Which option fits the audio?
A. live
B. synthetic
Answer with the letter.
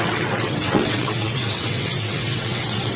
B